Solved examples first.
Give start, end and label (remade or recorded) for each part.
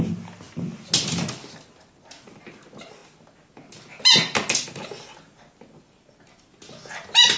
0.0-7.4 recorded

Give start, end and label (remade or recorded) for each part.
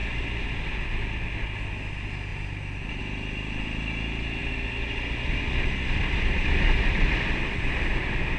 0.0-8.4 recorded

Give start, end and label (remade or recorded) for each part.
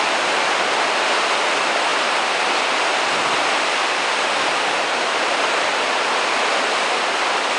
0.0-1.9 recorded; 1.9-6.5 remade; 6.5-7.6 recorded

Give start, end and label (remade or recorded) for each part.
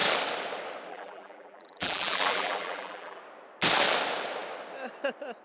0.0-0.9 recorded; 0.9-3.2 remade; 3.2-5.4 recorded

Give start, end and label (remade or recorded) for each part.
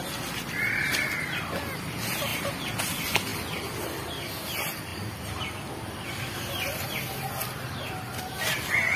0.0-9.0 recorded